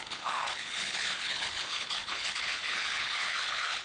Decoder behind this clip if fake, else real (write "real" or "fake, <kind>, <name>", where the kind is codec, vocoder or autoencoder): fake, codec, HILCodec